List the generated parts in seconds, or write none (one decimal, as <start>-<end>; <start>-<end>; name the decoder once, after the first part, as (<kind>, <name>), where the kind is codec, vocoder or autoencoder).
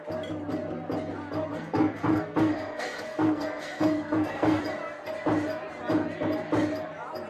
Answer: 1.5-4.6 (codec, SNAC)